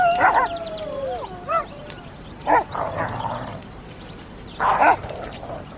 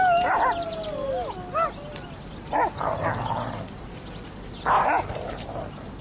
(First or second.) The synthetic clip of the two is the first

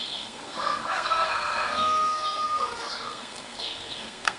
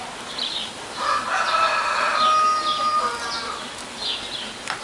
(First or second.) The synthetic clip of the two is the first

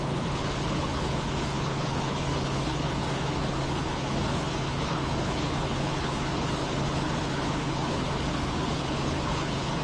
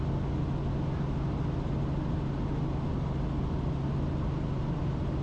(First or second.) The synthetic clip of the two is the first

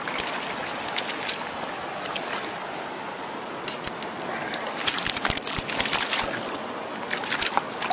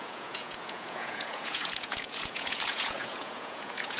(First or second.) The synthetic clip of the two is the second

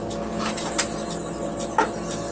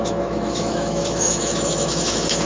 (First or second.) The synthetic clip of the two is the second